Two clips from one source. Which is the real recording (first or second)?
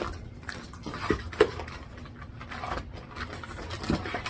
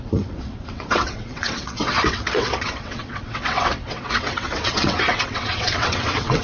first